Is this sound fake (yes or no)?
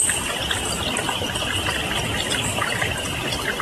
no